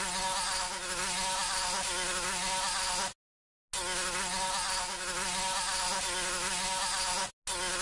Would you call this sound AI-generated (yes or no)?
no